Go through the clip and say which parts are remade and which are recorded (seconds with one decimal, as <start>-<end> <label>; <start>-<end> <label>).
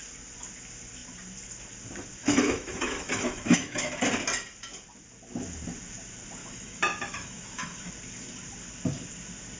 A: 0.0-2.2 recorded; 2.2-3.9 remade; 3.9-6.4 recorded; 6.4-7.9 remade; 7.9-9.6 recorded